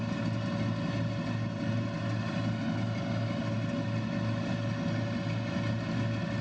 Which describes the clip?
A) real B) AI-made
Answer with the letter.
A